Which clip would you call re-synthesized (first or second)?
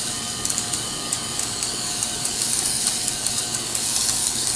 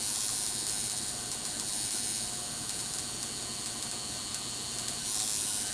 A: first